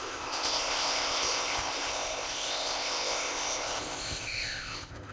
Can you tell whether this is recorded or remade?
remade